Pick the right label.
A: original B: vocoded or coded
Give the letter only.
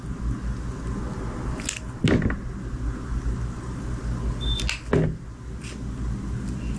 A